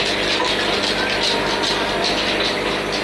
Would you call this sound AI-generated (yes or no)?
no